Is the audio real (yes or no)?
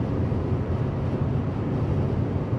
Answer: yes